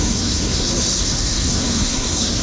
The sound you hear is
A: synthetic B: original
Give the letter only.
A